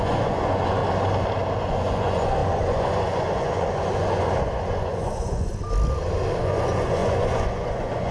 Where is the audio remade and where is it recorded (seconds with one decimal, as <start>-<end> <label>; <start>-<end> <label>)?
0.0-0.8 remade; 0.8-1.6 recorded; 1.6-5.5 remade; 5.5-6.4 recorded; 6.4-8.1 remade